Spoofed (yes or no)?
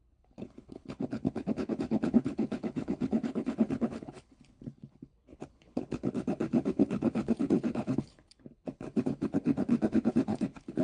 yes